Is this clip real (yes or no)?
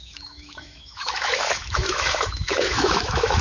no